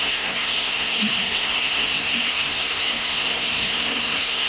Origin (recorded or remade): remade